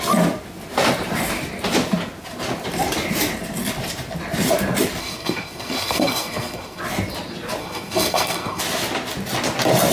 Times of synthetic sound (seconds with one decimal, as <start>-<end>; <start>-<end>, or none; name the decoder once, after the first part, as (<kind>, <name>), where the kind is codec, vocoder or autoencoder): 5.0-6.8 (codec, SNAC); 7.6-8.6